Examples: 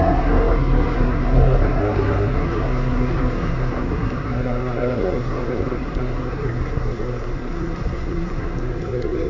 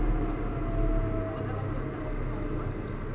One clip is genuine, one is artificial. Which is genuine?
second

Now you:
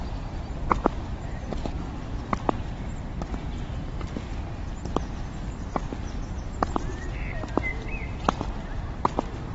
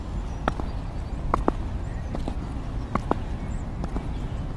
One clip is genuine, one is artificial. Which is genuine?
second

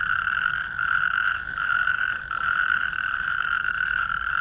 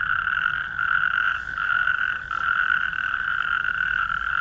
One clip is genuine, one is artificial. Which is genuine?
second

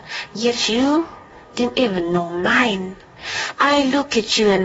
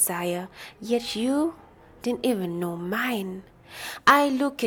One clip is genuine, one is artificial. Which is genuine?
second